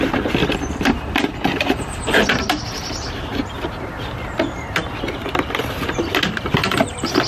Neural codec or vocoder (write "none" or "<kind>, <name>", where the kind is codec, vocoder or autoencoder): none